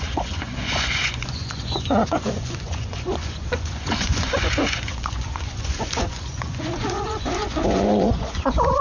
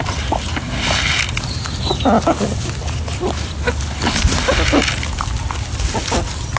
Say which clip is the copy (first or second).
first